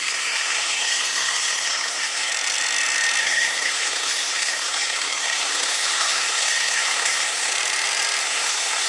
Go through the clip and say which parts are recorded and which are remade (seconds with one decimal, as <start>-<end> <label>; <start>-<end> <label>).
0.0-2.3 remade; 2.3-3.2 recorded; 3.2-7.5 remade; 7.5-8.2 recorded; 8.2-8.9 remade